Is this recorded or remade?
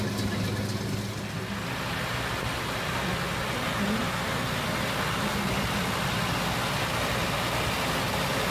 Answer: recorded